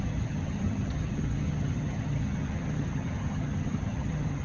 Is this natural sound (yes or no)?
no